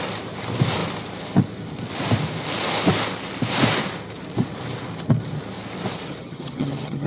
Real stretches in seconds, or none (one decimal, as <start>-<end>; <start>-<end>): 0.0-6.2